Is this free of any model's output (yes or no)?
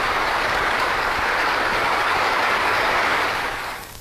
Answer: no